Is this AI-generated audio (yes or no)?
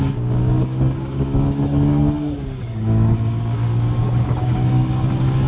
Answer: yes